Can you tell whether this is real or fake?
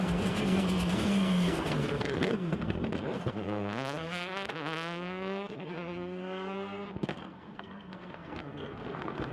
fake